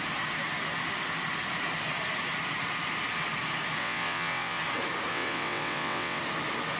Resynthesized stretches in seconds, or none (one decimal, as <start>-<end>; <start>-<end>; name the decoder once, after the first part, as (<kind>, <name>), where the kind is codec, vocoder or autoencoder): 3.8-4.6 (vocoder, WaveNeXt); 5.1-6.2